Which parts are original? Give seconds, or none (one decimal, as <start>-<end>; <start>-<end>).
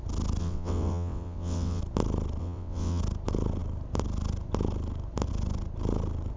0.0-0.4; 1.8-2.4; 3.0-6.4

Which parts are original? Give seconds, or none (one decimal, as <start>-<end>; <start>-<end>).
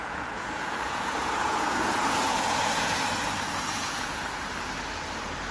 3.0-3.7; 4.3-5.5